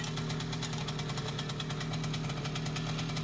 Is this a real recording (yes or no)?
yes